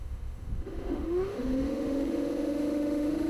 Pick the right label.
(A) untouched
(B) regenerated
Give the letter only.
B